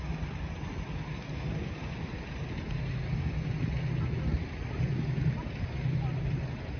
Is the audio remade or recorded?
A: recorded